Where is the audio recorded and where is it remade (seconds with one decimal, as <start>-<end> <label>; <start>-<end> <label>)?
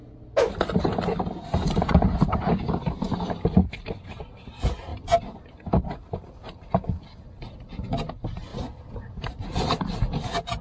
0.0-10.6 recorded